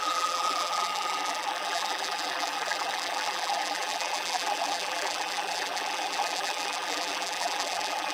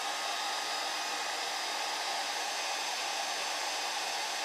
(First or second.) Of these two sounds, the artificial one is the first